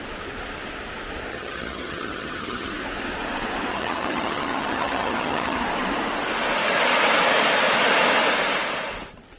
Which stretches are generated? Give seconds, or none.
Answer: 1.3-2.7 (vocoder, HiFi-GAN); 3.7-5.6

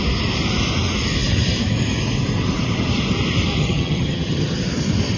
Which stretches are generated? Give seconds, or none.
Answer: 3.6-4.6 (vocoder, HiFi-GAN)

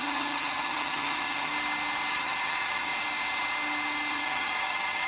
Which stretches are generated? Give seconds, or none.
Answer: 0.0-1.5 (vocoder, HiFi-GAN); 2.1-2.9; 4.1-5.1